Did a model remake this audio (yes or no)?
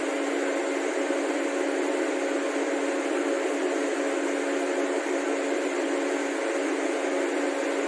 no